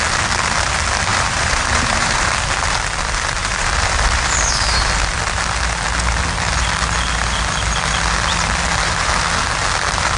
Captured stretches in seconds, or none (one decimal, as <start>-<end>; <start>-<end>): 0.0-1.1; 2.3-3.4; 4.9-10.2